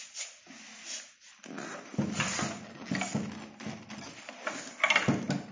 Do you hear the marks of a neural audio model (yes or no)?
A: no